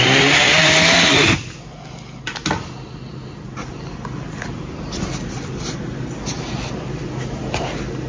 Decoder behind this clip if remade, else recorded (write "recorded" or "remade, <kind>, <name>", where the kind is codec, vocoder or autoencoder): recorded